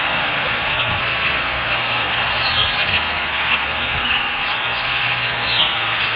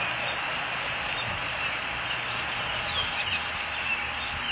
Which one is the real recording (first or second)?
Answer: second